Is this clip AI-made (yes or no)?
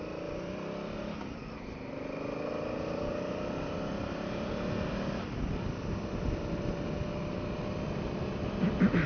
yes